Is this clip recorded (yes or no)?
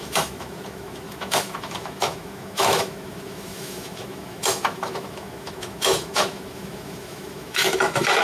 no